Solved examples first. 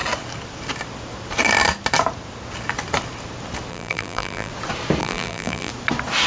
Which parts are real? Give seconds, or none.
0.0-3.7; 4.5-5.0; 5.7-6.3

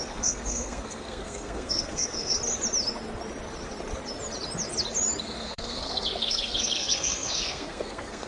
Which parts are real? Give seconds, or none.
2.4-5.2

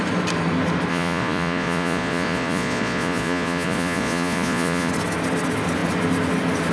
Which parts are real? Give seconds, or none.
0.0-0.9; 4.9-6.7

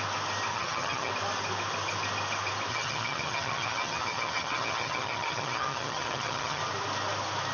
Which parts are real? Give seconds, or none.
0.0-0.5; 1.1-2.7; 6.6-7.5

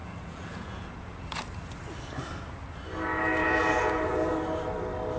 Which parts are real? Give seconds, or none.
1.4-3.4; 4.3-5.2